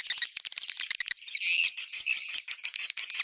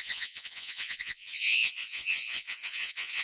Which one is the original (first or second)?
first